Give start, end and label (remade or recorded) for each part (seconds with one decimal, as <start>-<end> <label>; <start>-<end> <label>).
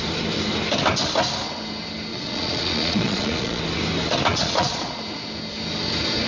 0.0-2.1 recorded; 2.1-3.6 remade; 3.6-4.3 recorded; 4.3-5.0 remade; 5.0-6.3 recorded